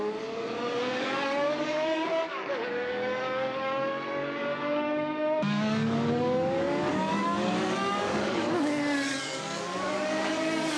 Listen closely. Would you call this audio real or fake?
fake